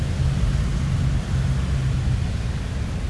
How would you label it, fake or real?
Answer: real